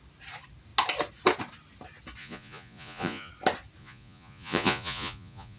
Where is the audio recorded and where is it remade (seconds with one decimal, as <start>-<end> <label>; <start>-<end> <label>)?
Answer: 0.0-2.2 recorded; 2.2-3.3 remade; 3.3-3.8 recorded; 3.8-5.6 remade